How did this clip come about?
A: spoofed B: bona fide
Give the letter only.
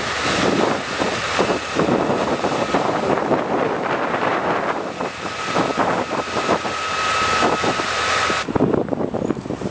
A